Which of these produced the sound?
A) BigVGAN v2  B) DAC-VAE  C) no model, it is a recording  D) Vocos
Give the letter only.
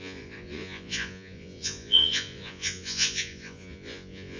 D